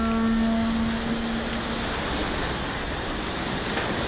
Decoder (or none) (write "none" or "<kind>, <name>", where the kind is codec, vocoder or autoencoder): none